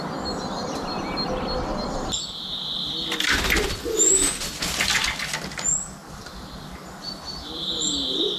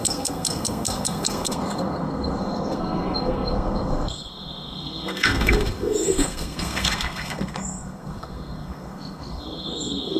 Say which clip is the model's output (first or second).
second